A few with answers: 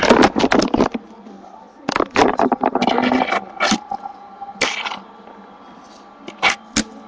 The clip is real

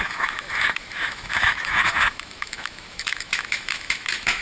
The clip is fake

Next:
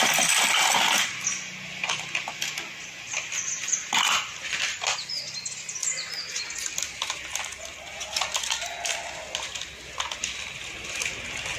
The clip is real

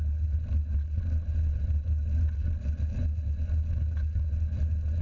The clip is real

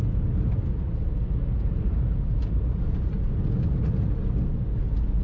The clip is real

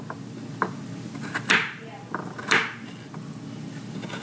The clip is real